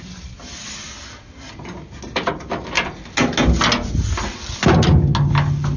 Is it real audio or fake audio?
real